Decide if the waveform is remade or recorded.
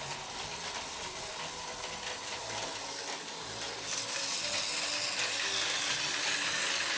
recorded